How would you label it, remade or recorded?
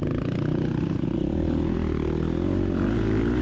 recorded